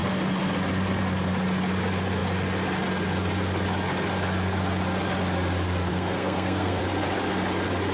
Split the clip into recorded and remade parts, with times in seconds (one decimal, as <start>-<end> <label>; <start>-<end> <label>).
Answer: 0.0-5.9 recorded; 5.9-6.8 remade; 6.8-7.9 recorded